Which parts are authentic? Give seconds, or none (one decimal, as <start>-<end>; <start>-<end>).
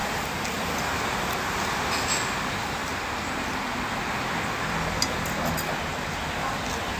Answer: 0.0-7.0